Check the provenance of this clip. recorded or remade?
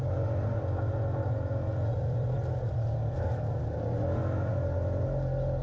recorded